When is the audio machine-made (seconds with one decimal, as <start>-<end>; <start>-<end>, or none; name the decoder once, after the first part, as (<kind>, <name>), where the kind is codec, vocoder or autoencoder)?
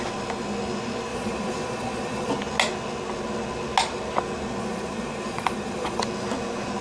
1.1-2.3 (vocoder, Vocos); 4.6-6.0